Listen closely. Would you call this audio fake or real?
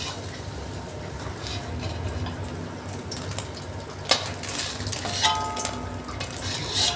real